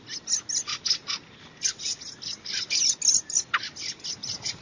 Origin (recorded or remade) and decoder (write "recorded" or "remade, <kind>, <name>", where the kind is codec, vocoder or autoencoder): recorded